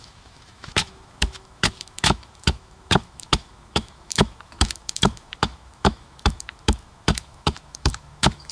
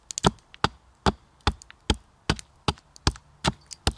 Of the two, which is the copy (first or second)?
first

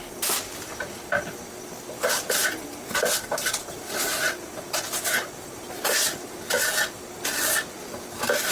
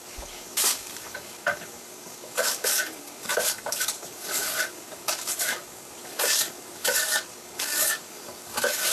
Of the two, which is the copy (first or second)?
second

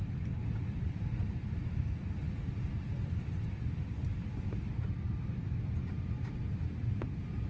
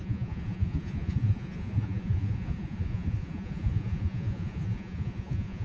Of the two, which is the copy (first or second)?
second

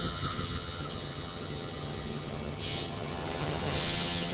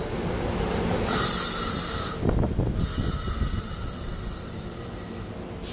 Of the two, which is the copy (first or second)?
first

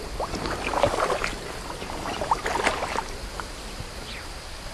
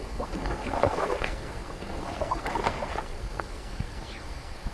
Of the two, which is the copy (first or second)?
second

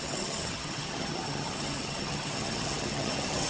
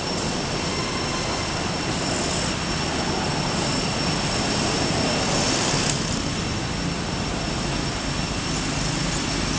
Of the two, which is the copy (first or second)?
first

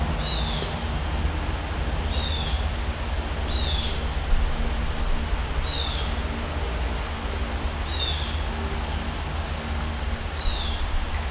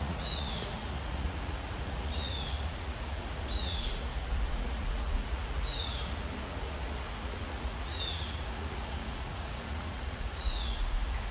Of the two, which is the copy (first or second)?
second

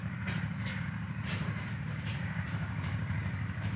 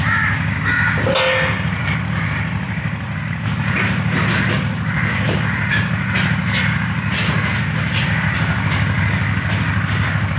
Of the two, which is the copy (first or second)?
first